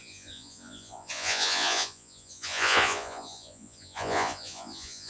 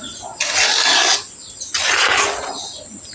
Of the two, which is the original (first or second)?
second